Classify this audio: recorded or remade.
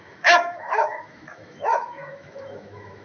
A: remade